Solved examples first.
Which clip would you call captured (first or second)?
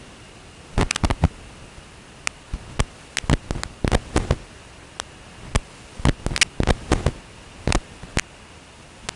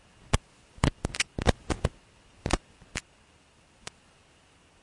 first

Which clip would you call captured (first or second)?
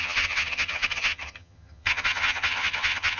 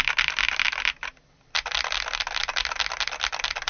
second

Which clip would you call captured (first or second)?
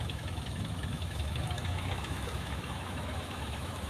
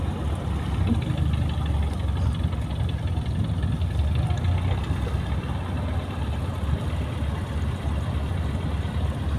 second